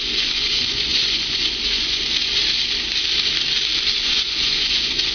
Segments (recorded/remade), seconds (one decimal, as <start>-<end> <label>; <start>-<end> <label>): 0.0-2.4 remade; 2.4-4.0 recorded; 4.0-5.1 remade